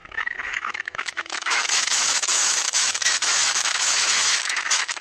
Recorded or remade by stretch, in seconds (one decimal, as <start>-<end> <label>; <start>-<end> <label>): 0.0-5.0 remade